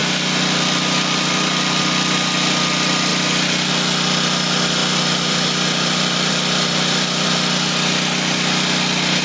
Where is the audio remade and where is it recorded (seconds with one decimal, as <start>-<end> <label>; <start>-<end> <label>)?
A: 0.0-1.8 remade; 1.8-4.8 recorded; 4.8-7.3 remade; 7.3-9.2 recorded